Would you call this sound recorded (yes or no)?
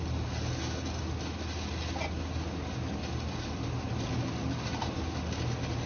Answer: yes